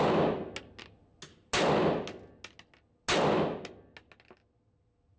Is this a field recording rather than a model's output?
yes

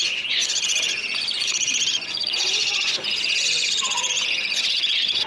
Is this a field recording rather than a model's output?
no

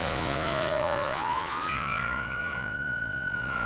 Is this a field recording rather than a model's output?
no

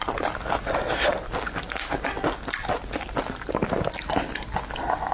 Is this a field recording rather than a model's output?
yes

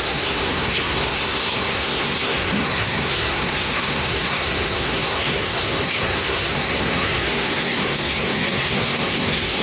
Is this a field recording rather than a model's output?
no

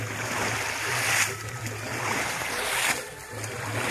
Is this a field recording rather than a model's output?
yes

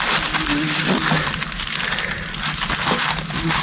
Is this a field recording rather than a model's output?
yes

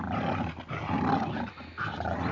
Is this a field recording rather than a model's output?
yes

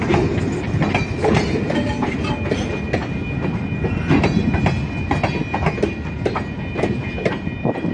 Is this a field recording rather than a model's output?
yes